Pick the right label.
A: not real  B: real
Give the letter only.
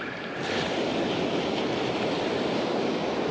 B